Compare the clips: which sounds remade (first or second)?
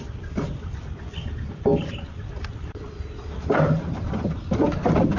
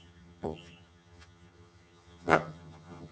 second